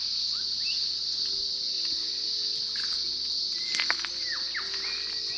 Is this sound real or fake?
real